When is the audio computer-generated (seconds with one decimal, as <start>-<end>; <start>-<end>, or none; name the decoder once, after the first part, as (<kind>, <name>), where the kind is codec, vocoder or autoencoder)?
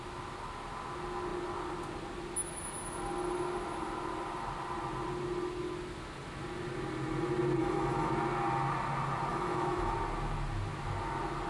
7.6-8.1 (autoencoder, DAC-VAE); 9.3-9.9